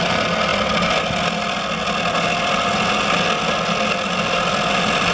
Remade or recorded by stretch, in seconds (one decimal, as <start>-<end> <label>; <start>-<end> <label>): 0.0-5.1 recorded